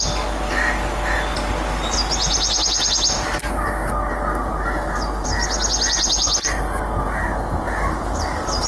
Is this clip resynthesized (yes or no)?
no